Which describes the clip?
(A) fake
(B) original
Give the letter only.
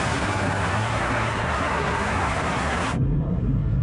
A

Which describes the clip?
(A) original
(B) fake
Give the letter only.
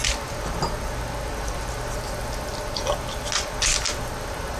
A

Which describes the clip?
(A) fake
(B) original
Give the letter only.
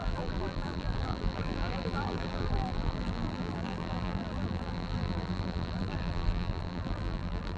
A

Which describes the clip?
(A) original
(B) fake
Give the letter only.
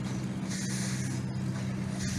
A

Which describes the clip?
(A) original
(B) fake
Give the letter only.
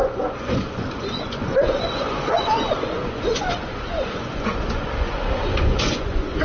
B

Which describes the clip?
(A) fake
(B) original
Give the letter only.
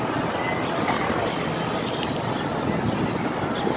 B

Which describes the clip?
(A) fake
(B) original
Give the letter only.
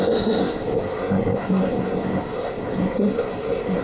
A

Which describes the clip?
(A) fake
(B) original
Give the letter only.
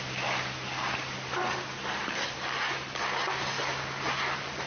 B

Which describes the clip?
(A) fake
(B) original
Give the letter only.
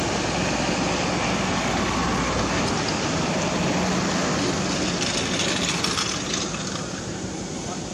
B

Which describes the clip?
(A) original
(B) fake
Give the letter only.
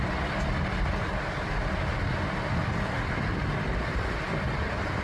A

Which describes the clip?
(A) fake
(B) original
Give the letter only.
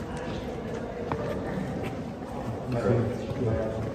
B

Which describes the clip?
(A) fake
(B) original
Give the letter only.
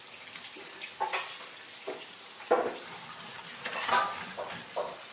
B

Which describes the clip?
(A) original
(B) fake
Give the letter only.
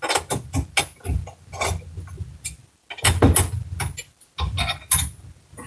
A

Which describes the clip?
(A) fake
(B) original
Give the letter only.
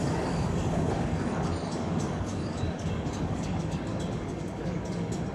A